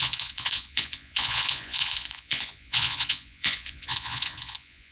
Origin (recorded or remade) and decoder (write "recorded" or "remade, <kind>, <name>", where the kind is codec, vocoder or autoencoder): remade, vocoder, Vocos